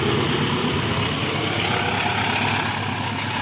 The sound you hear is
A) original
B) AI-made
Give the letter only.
A